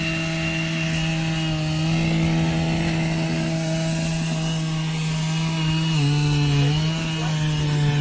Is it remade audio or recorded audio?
recorded